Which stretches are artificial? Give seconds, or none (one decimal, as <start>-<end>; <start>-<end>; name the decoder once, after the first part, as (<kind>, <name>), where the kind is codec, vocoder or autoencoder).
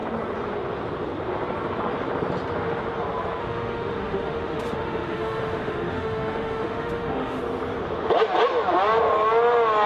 3.4-7.4 (autoencoder, DAC-VAE)